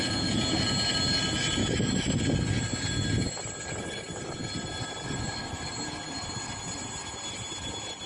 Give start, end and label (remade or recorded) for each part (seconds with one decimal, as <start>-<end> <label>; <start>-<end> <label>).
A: 0.0-1.6 recorded; 1.6-2.2 remade; 2.2-8.1 recorded